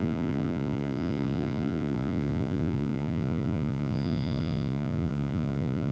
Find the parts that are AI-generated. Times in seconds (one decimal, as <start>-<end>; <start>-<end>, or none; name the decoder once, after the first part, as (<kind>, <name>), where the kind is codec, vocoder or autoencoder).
0.0-5.9 (vocoder, Vocos)